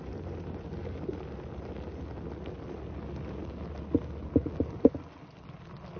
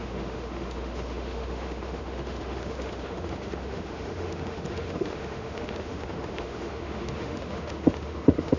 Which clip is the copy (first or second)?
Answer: second